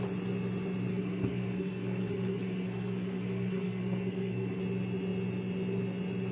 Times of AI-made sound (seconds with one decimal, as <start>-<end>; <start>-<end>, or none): 0.9-4.6